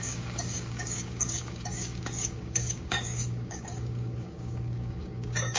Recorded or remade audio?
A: remade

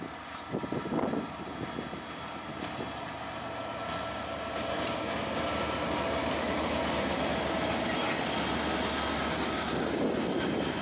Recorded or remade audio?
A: recorded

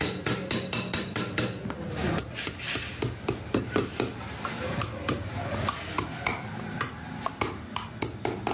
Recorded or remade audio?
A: recorded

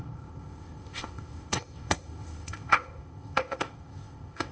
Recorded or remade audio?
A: remade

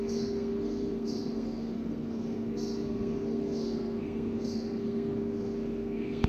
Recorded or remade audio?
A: remade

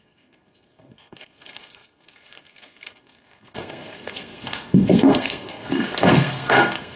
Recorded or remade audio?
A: remade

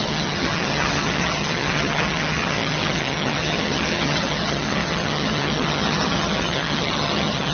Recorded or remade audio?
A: remade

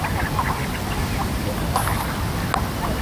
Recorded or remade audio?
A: recorded